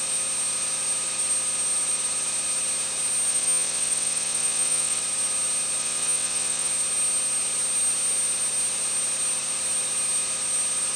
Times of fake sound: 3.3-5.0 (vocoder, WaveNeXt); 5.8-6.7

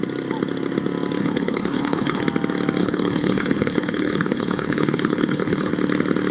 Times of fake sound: 1.2-2.2 (codec, HILCodec); 2.8-5.7

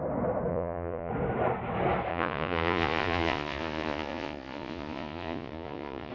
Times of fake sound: 0.5-1.1 (vocoder, Vocos); 2.1-6.1

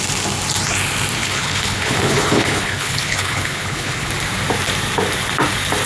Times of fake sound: 1.2-4.1 (codec, HILCodec)